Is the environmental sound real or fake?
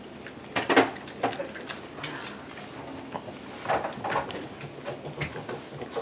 real